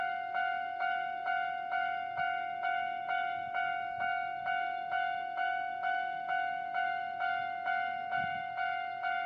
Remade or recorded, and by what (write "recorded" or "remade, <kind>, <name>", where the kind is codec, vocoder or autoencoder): remade, autoencoder, DAC-VAE